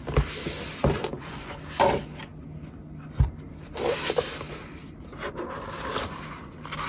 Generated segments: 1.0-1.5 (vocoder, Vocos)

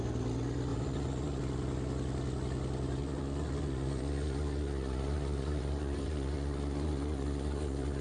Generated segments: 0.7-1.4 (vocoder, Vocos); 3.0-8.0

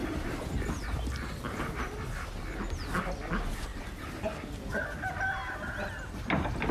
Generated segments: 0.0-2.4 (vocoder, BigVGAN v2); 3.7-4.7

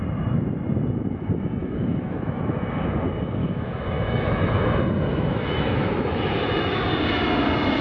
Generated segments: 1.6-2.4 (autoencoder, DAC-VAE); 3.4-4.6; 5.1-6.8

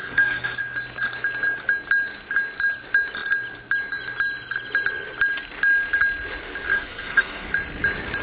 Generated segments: 0.0-0.6 (codec, SNAC); 6.7-7.5